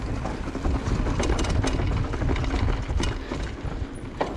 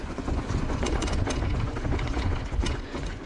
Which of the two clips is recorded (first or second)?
first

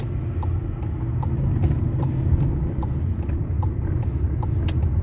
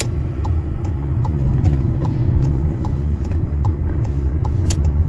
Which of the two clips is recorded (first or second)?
first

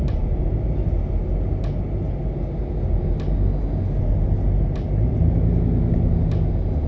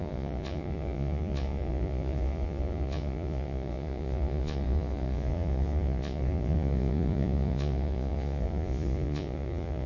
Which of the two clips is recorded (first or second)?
first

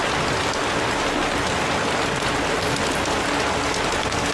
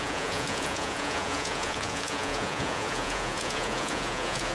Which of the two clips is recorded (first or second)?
first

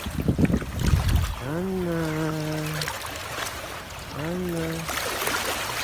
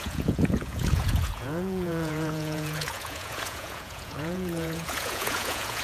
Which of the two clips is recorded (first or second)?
first